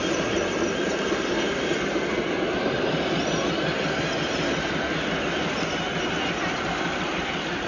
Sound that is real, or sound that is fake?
real